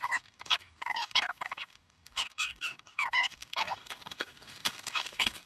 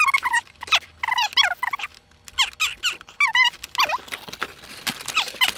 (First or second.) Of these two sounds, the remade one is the first